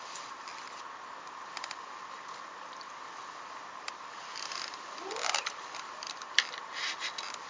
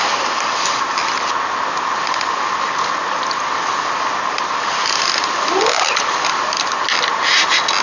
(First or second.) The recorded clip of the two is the second